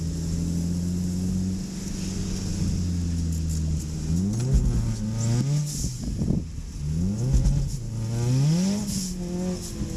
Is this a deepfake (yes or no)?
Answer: no